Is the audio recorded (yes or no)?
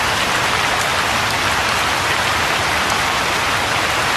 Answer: yes